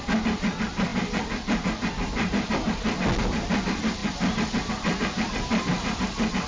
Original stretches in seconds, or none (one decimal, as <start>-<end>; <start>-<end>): 4.0-4.7

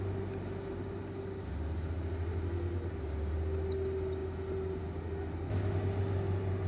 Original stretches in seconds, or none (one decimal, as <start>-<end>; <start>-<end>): 0.0-6.7